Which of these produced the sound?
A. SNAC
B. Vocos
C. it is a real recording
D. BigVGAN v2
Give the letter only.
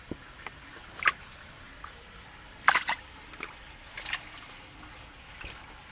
C